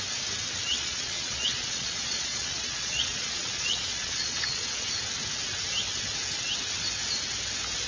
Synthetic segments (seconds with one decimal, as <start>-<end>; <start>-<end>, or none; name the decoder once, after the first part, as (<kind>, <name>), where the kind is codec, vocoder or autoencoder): 0.7-4.9 (vocoder, Vocos)